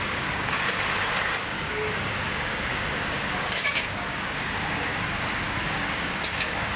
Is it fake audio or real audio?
fake